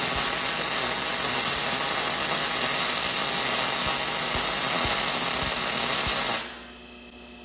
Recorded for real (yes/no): yes